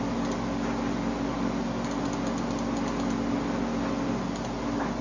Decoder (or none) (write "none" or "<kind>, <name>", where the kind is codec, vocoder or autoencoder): none